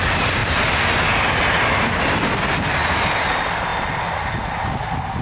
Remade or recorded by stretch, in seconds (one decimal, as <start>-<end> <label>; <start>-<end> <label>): 0.0-5.2 recorded